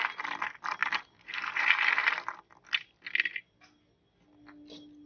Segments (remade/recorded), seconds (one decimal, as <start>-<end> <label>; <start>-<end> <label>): 0.0-5.1 recorded